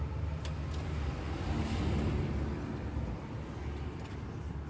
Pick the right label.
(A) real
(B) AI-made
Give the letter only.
A